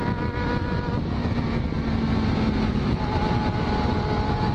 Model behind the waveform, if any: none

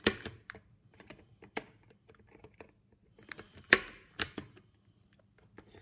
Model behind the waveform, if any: none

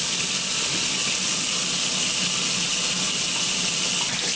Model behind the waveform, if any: none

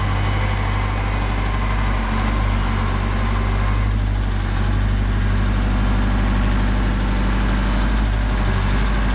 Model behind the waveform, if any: none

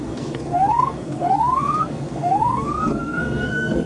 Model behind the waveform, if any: codec, SNAC